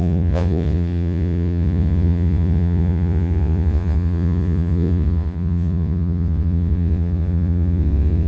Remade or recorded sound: remade